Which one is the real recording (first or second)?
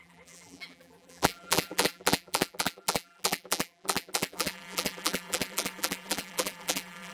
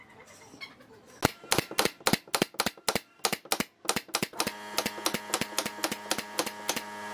second